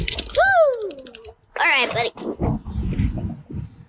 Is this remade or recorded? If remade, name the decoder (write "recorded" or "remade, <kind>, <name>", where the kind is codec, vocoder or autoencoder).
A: recorded